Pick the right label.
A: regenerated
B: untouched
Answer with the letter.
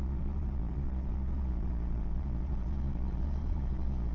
A